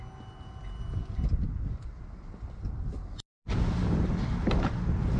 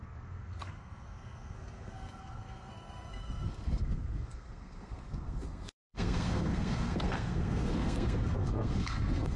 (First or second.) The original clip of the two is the first